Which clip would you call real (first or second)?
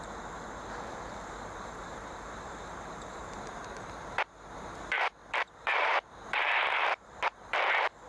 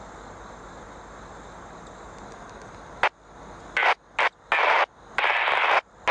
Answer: second